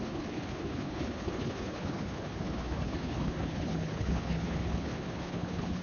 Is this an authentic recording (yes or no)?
no